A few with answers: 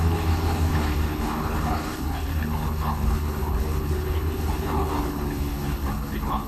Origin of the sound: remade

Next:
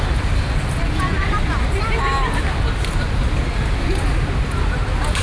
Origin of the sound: recorded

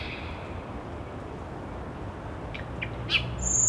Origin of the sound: recorded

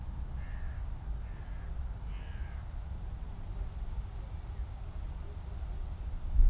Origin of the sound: recorded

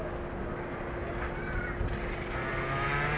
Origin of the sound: recorded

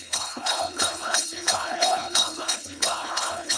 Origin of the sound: remade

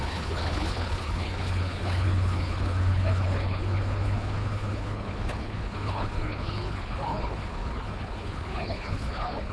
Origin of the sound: remade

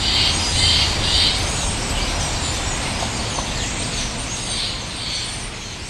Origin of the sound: recorded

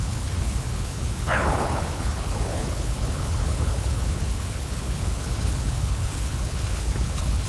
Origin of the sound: remade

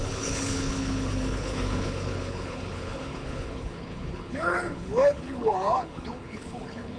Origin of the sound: remade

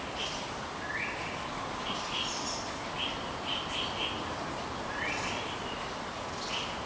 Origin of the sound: recorded